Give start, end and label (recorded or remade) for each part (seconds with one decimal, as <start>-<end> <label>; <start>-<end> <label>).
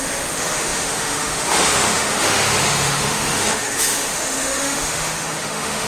0.0-5.9 remade